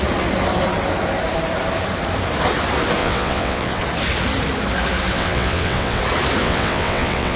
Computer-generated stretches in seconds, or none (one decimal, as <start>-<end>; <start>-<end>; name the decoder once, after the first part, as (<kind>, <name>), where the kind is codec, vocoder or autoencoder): 3.0-3.8 (vocoder, WaveNeXt); 5.1-6.0; 6.4-7.4